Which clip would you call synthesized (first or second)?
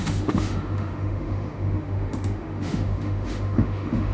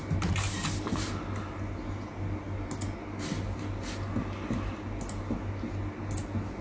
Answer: first